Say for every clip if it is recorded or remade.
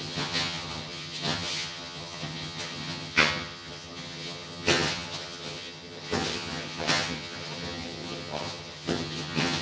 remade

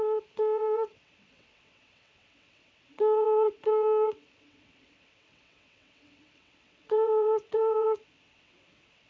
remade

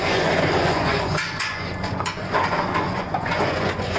remade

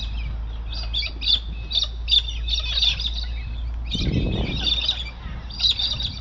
recorded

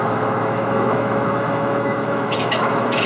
remade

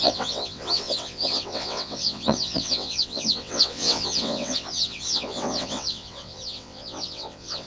remade